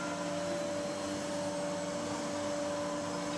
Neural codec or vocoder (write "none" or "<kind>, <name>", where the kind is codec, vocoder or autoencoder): none